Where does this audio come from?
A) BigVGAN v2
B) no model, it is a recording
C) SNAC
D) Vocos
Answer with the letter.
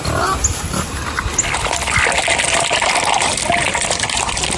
B